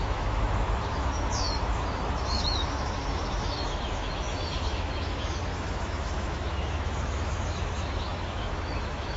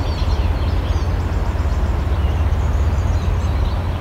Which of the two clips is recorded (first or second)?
second